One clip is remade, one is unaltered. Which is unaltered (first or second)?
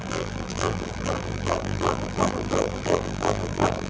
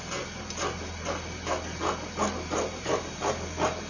second